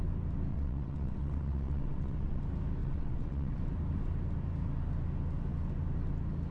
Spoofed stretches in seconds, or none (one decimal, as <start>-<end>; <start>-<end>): 0.5-2.4; 2.8-3.6